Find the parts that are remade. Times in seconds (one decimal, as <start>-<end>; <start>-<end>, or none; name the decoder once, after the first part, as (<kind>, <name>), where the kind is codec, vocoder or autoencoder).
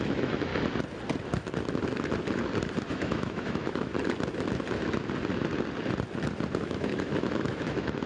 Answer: 0.0-0.5 (autoencoder, DAC-VAE); 2.9-3.9; 6.6-8.1